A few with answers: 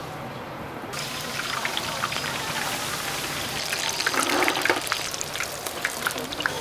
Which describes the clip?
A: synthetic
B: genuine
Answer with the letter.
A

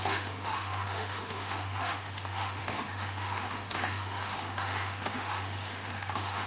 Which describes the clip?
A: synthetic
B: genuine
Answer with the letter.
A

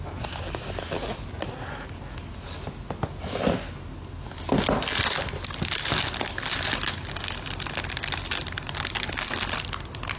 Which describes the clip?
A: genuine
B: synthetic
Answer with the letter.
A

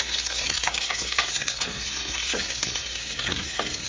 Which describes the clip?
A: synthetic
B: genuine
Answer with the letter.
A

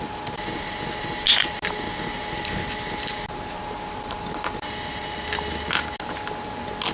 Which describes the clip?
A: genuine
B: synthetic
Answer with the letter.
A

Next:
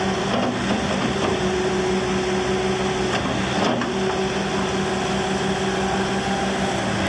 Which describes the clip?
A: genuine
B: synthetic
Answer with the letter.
A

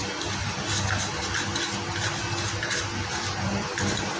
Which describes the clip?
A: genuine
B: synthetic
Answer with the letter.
A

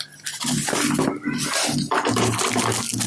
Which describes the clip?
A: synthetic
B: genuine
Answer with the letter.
B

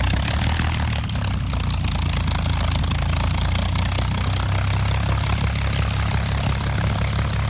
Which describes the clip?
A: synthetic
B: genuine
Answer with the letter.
B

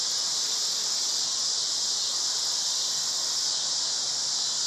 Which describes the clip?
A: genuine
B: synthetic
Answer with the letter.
A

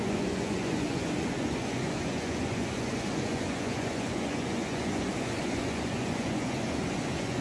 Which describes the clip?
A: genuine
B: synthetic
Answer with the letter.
B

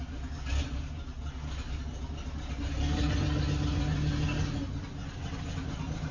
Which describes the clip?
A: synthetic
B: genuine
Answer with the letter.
B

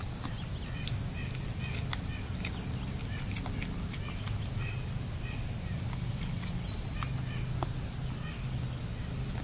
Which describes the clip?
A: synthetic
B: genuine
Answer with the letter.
B